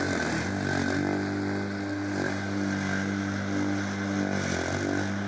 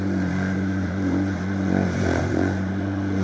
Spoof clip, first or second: second